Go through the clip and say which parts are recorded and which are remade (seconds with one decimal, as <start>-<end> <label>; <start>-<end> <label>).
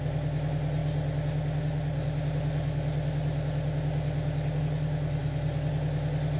0.0-6.4 recorded